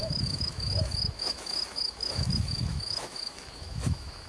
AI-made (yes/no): yes